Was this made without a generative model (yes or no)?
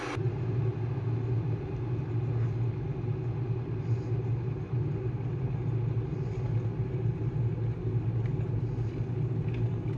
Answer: yes